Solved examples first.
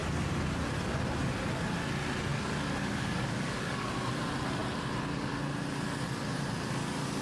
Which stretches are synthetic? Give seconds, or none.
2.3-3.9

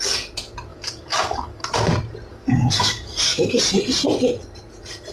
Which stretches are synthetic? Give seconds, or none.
0.7-1.7; 2.3-3.6

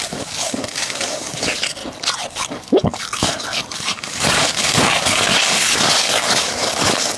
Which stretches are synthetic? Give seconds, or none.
0.0-1.8; 2.3-7.2

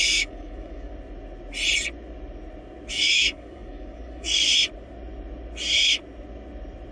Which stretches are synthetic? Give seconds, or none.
0.0-0.9; 2.9-4.5

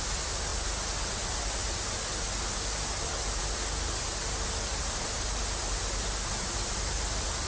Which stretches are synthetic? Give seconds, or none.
none